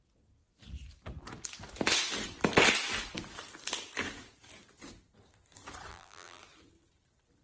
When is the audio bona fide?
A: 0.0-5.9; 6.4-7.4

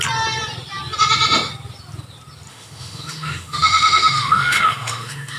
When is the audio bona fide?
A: 0.0-2.5

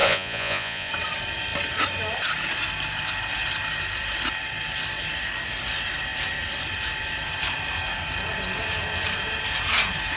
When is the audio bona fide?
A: 0.9-10.2

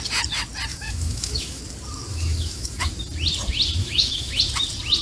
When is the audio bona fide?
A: 0.0-0.7; 1.6-2.1; 2.9-3.8; 4.4-5.0

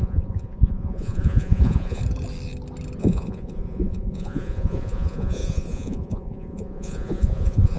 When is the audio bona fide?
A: 2.0-3.0

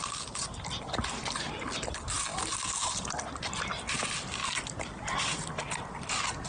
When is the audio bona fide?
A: 0.0-6.5